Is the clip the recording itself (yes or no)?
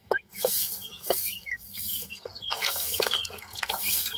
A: no